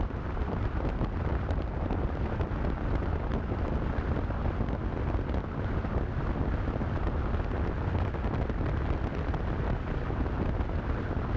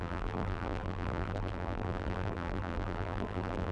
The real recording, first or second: first